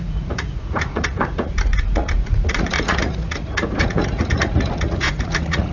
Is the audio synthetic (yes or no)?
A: yes